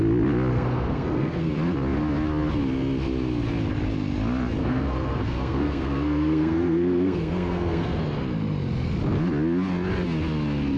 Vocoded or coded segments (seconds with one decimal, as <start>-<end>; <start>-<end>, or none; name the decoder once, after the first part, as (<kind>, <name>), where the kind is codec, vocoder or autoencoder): 0.5-1.5 (codec, SNAC); 4.6-8.0

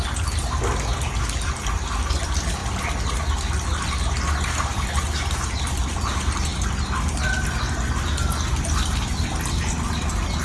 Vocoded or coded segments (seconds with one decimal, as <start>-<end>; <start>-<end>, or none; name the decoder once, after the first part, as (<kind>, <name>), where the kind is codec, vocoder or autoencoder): none

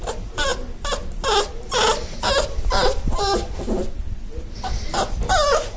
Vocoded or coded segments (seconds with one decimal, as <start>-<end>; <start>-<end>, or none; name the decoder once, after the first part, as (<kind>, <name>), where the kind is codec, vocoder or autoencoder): none

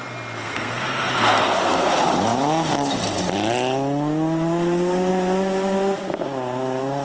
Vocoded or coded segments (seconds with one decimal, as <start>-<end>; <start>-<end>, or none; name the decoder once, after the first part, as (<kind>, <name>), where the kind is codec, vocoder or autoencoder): 0.4-1.9 (codec, SNAC)

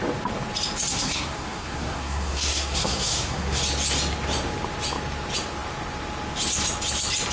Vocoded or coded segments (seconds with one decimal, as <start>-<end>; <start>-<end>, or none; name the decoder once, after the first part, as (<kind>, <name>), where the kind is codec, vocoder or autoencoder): 0.9-3.6 (codec, SNAC)